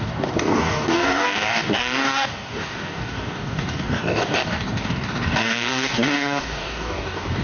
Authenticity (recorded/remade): remade